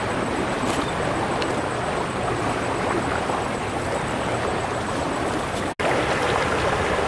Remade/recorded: recorded